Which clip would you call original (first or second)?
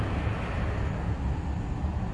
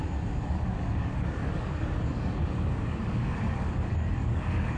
first